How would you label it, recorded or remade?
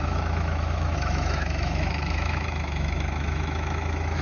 remade